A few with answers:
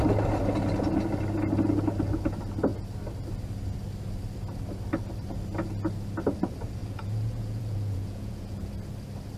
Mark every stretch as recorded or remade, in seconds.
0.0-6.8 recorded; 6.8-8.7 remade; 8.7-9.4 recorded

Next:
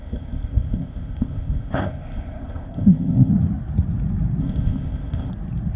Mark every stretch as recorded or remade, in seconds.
0.0-3.3 remade; 3.3-4.4 recorded; 4.4-5.3 remade; 5.3-5.8 recorded

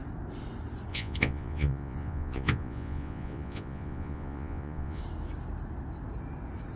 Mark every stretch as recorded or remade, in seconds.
0.0-0.9 recorded; 0.9-5.0 remade; 5.0-6.8 recorded

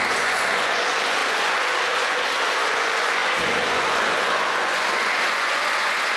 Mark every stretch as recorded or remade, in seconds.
0.0-6.2 remade

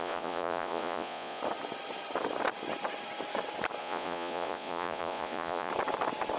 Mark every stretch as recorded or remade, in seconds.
0.0-1.4 remade; 1.4-3.8 recorded; 3.8-5.7 remade; 5.7-6.4 recorded

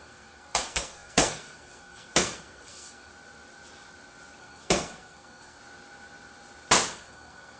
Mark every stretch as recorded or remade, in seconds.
0.0-3.1 remade; 3.1-4.4 recorded; 4.4-5.6 remade; 5.6-6.9 recorded; 6.9-7.6 remade

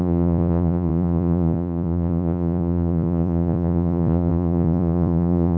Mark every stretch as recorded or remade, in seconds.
0.0-5.6 remade